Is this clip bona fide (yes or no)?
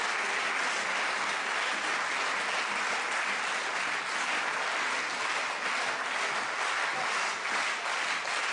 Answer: yes